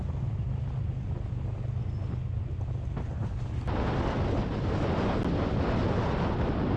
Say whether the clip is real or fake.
real